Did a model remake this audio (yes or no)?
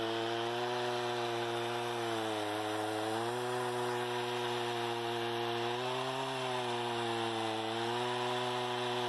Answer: no